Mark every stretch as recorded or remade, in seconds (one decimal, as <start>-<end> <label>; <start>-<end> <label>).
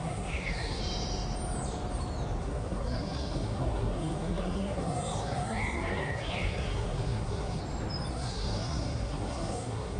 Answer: 0.0-0.8 remade; 0.8-2.4 recorded; 2.4-7.6 remade; 7.6-8.1 recorded; 8.1-10.0 remade